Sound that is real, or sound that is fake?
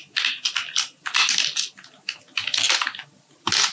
real